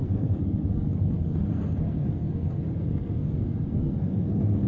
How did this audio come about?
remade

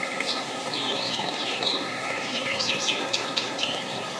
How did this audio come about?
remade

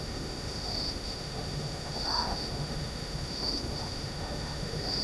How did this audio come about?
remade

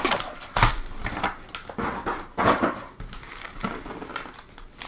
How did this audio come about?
recorded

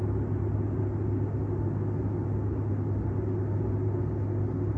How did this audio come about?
recorded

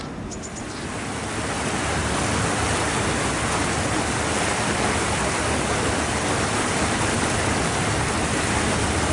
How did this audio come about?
recorded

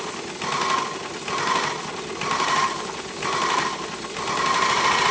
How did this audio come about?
recorded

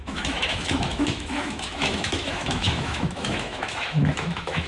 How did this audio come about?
remade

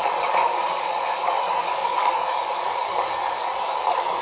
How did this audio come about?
remade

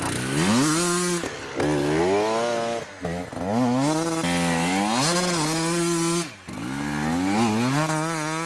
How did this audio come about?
recorded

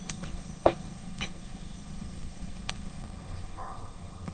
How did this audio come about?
remade